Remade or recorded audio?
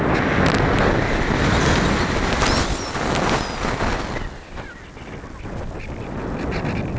recorded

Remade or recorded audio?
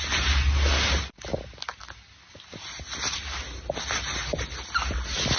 recorded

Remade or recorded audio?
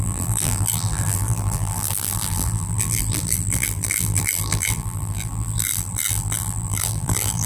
remade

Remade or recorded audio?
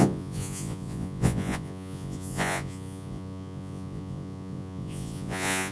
remade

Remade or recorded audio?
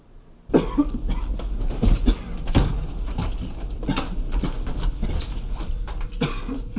recorded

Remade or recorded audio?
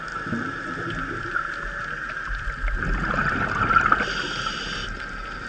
recorded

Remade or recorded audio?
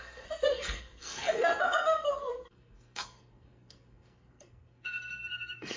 remade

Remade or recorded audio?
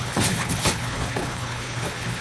remade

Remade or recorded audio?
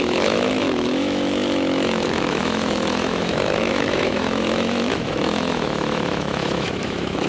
remade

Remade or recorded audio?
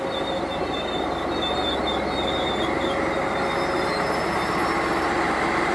recorded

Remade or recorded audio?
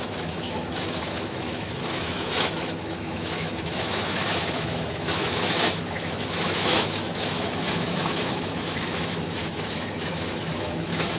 remade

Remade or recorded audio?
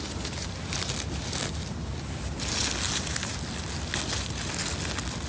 recorded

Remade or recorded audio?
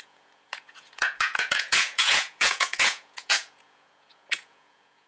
remade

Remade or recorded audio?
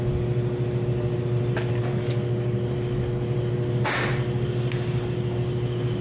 recorded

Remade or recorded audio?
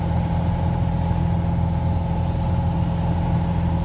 recorded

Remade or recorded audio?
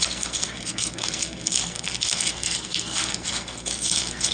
remade